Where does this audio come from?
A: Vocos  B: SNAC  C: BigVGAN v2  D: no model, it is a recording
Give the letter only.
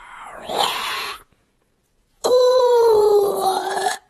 A